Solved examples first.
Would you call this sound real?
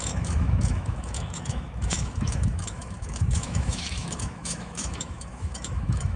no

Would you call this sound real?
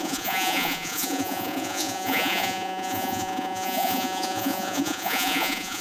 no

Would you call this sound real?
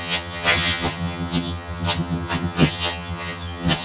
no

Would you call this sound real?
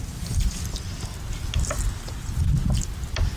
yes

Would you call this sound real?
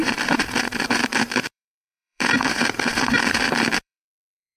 no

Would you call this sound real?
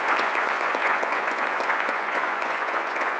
no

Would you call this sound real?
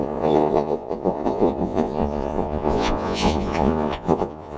no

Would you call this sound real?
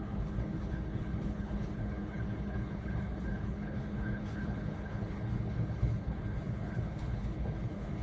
no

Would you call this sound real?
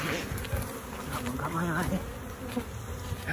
yes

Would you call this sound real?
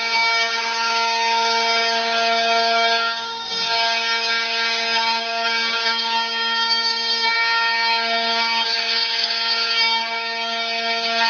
no